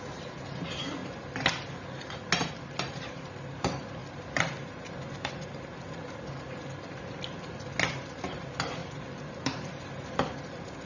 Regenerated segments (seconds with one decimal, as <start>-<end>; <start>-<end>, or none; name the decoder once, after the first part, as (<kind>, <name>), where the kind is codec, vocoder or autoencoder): 8.8-10.0 (vocoder, BigVGAN v2)